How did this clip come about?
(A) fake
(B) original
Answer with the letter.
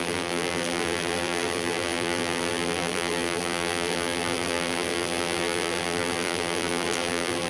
A